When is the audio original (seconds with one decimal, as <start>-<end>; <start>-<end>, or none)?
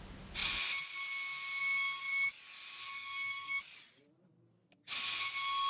0.0-2.9; 3.6-5.7